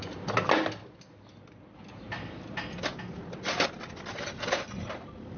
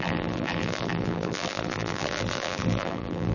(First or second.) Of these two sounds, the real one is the first